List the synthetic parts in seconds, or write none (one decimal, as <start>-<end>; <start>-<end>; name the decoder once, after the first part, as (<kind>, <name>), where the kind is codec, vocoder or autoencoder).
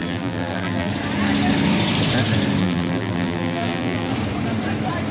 0.0-0.9 (vocoder, BigVGAN v2); 2.6-4.1